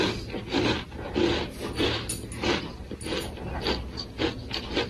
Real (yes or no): yes